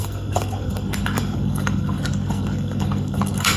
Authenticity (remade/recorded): remade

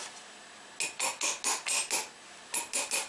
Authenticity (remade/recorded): recorded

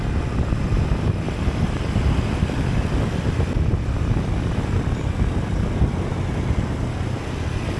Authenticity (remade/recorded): recorded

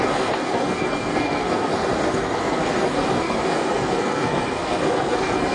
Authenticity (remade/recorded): remade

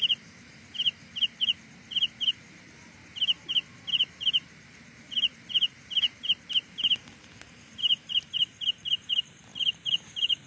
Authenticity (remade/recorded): remade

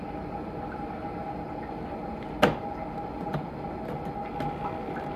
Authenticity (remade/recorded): recorded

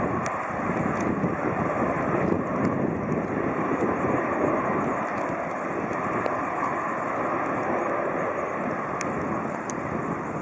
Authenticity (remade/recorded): recorded